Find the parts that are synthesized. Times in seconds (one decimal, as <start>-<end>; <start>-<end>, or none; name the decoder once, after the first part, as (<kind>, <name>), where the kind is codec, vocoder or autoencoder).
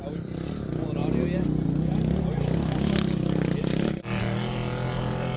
none